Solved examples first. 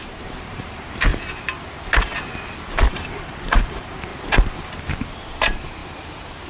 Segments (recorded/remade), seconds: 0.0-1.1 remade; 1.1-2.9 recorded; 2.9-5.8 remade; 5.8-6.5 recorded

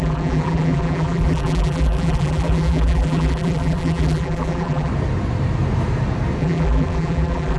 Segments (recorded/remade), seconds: 0.0-4.9 remade; 4.9-6.4 recorded; 6.4-7.6 remade

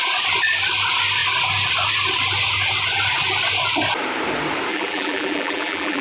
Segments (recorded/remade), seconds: 0.0-4.7 recorded; 4.7-6.0 remade

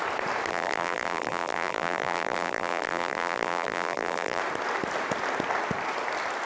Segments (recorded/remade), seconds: 0.0-0.5 recorded; 0.5-4.4 remade; 4.4-6.5 recorded

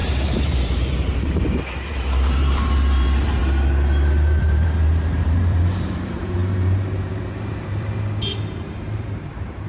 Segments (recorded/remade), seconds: 0.0-3.4 remade; 3.4-4.4 recorded; 4.4-9.7 remade